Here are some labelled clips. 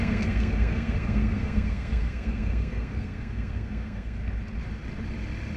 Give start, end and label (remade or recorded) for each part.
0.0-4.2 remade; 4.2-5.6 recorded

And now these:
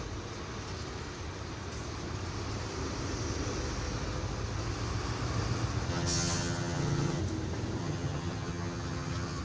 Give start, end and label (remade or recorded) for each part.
0.0-5.9 recorded; 5.9-7.2 remade; 7.2-7.8 recorded; 7.8-9.4 remade

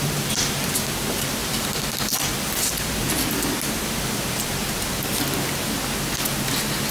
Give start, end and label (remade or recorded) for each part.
0.0-4.6 remade; 4.6-6.9 recorded

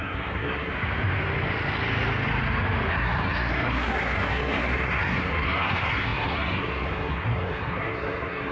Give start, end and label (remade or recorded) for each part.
0.0-0.7 remade; 0.7-2.9 recorded; 2.9-8.5 remade

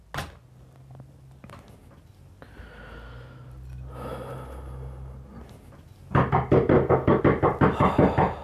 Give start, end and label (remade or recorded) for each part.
0.0-6.7 recorded; 6.7-7.2 remade; 7.2-8.4 recorded